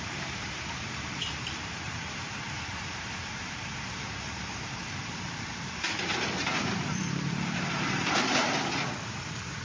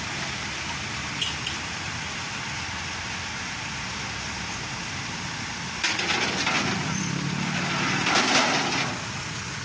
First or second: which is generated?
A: first